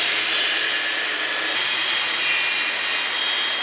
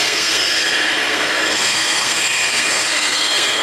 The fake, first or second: second